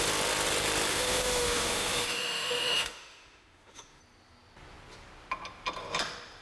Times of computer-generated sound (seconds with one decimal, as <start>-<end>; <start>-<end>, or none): 0.9-4.0